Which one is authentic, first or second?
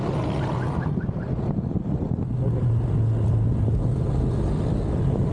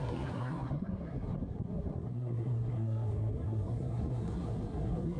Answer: first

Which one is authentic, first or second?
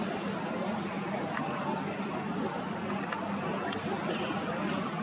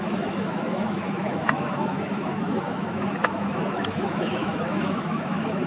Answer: first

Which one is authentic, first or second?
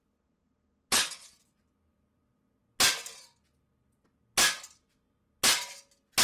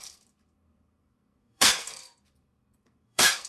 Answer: first